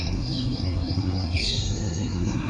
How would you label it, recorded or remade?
remade